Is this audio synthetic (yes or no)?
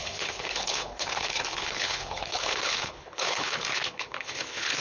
yes